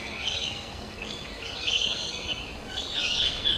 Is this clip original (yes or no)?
no